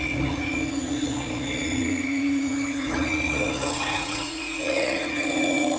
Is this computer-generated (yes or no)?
yes